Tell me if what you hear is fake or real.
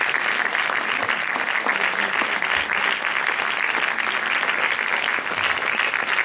real